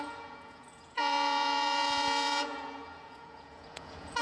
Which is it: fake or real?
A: fake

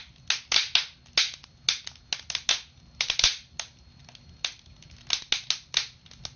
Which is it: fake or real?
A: real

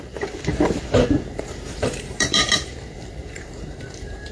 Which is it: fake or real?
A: fake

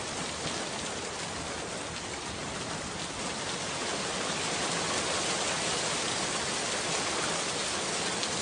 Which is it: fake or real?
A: real